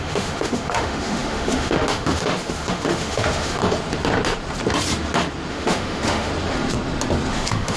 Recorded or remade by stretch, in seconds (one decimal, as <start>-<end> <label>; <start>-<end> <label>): 0.0-3.6 remade; 3.6-5.5 recorded; 5.5-6.3 remade; 6.3-7.3 recorded; 7.3-7.8 remade